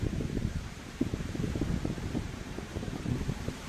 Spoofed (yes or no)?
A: yes